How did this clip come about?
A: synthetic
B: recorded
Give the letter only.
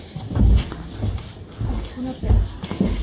B